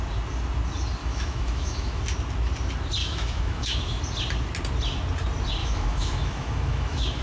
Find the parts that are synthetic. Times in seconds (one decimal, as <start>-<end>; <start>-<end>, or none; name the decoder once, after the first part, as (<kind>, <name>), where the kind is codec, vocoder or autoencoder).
1.0-2.0 (autoencoder, DAC-VAE); 3.0-4.0; 5.6-7.2